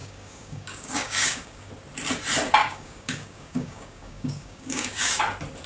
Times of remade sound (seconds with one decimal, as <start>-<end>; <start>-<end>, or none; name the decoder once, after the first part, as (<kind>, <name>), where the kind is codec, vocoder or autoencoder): 0.0-1.7 (codec, DAC); 2.6-5.2